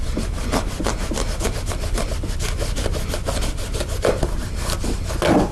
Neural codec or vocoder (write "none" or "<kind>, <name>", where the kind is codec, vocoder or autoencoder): none